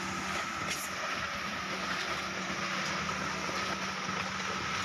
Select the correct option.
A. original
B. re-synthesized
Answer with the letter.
A